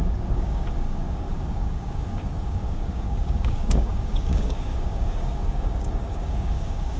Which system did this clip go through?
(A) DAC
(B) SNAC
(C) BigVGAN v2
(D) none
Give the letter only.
A